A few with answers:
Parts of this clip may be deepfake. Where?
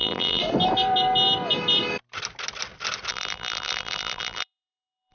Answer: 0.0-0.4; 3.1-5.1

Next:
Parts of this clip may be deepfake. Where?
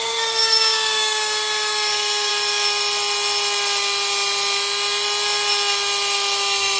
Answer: 0.0-2.3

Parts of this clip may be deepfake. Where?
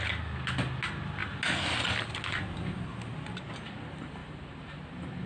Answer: 4.2-4.8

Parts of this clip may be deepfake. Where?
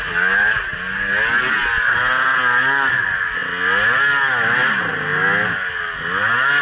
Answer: none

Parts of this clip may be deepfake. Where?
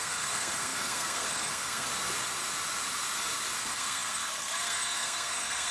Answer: 0.0-1.9; 3.6-5.7